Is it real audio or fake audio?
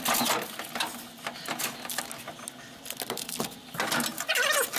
real